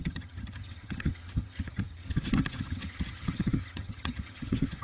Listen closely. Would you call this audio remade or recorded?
remade